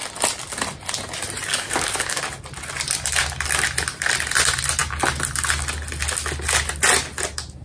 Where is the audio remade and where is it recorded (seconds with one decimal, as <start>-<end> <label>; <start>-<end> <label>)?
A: 0.0-1.5 recorded; 1.5-2.2 remade; 2.2-7.6 recorded